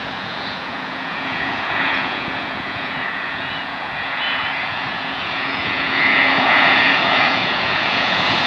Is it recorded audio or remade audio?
remade